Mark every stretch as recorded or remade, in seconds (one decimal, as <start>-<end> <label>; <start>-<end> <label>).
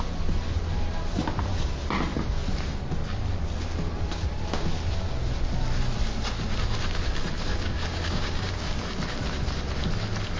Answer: 0.0-7.5 recorded; 7.5-8.8 remade; 8.8-10.4 recorded